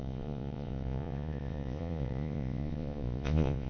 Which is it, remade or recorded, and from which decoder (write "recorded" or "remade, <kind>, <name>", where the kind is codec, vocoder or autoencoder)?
remade, vocoder, Vocos